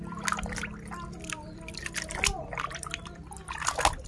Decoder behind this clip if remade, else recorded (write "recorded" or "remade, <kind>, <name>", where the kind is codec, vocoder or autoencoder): recorded